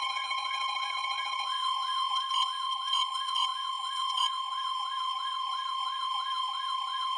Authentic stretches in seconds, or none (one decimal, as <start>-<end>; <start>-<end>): none